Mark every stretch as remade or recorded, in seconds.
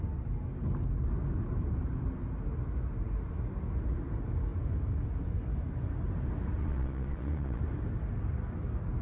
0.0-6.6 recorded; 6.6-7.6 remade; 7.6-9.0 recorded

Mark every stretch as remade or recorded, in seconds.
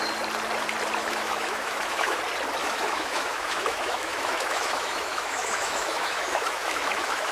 0.0-1.0 recorded; 1.0-2.2 remade; 2.2-2.6 recorded; 2.6-7.3 remade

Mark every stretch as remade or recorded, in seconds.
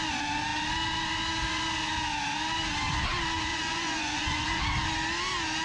0.0-3.5 recorded; 3.5-4.6 remade; 4.6-5.6 recorded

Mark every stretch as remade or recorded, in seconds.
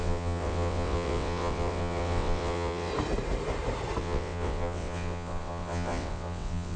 0.0-2.9 remade; 2.9-4.0 recorded; 4.0-6.8 remade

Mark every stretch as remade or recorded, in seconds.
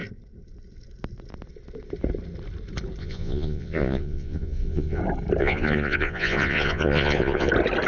0.0-3.0 recorded; 3.0-5.0 remade; 5.0-5.4 recorded; 5.4-7.5 remade; 7.5-7.9 recorded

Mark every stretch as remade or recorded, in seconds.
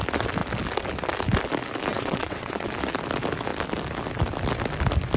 0.0-1.9 recorded; 1.9-2.7 remade; 2.7-5.2 recorded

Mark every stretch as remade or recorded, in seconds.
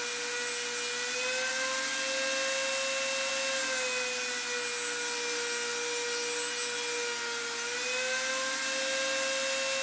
0.0-9.8 recorded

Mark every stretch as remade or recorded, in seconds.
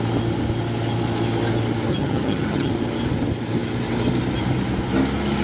0.0-1.9 recorded; 1.9-2.7 remade; 2.7-5.4 recorded